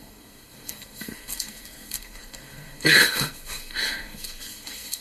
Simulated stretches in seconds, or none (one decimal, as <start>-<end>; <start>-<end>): 0.0-5.0